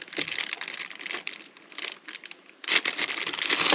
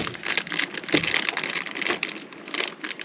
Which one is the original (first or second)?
second